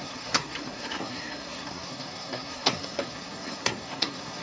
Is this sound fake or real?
fake